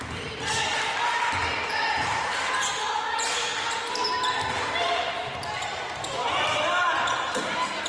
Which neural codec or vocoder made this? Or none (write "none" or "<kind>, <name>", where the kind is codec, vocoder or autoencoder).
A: vocoder, BigVGAN v2